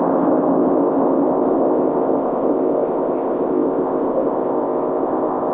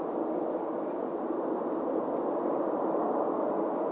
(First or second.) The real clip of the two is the second